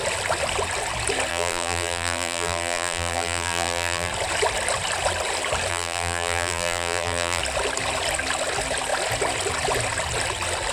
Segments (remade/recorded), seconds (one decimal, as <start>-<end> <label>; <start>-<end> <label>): 0.0-1.3 recorded; 1.3-4.1 remade; 4.1-5.7 recorded; 5.7-7.4 remade; 7.4-10.7 recorded